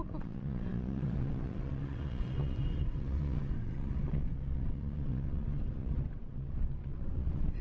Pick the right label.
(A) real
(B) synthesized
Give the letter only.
B